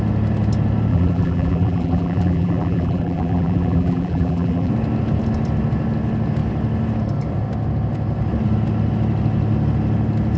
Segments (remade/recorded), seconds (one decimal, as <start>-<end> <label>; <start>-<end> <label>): 0.0-0.9 recorded; 0.9-4.7 remade; 4.7-10.4 recorded